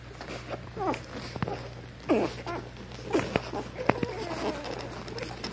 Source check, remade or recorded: recorded